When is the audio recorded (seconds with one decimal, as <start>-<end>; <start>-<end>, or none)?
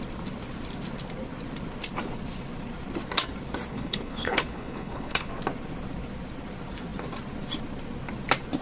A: 0.0-3.7; 5.3-8.6